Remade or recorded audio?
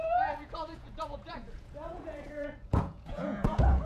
remade